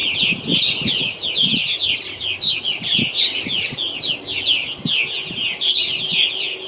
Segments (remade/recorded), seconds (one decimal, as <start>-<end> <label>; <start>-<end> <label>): 0.0-4.0 remade; 4.0-5.4 recorded; 5.4-6.7 remade